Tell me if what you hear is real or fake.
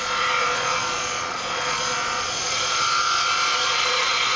fake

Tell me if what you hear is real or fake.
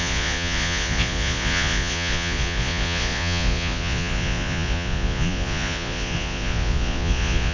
fake